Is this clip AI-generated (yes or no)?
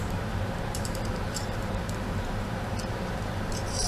yes